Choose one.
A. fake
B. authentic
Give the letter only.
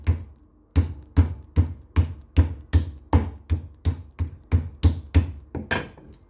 B